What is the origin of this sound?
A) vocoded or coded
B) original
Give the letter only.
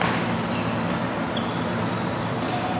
A